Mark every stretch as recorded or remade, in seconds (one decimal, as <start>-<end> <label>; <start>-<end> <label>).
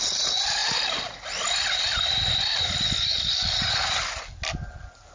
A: 0.0-5.1 recorded